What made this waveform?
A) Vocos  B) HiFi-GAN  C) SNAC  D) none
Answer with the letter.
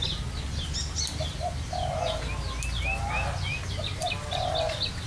D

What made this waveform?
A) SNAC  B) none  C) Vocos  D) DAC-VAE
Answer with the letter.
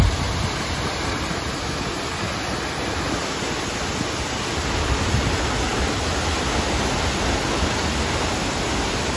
B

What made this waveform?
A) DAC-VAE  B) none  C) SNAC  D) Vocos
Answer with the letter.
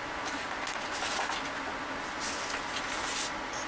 B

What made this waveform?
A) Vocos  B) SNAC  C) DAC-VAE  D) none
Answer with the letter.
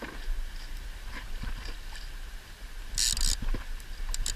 D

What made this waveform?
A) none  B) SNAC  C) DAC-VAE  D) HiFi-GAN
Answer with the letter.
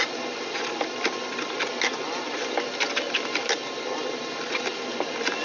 A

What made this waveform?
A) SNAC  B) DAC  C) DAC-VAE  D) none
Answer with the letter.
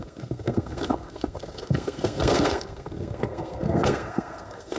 A